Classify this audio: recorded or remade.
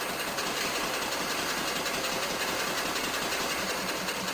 recorded